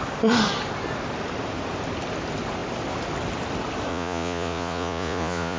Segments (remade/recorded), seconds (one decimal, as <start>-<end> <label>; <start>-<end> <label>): 0.0-3.9 recorded; 3.9-5.6 remade